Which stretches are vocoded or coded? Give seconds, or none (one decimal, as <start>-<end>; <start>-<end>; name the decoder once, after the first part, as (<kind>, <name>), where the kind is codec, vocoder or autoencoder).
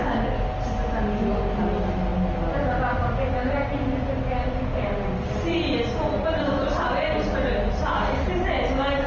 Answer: none